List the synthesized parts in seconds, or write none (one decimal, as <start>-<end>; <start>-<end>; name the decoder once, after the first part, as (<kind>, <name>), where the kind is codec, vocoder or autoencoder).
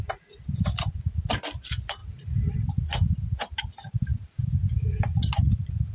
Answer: none